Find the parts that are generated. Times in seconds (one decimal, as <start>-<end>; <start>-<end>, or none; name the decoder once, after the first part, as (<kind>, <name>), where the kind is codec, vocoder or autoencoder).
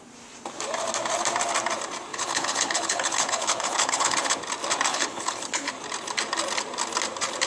2.1-4.4 (codec, HILCodec); 4.9-5.7